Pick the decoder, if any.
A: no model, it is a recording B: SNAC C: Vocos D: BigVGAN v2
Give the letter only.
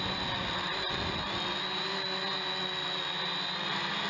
A